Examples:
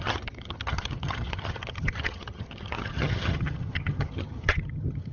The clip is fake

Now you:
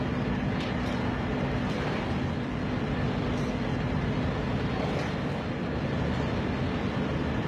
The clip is real